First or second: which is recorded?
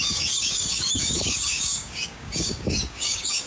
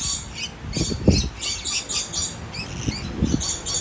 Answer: second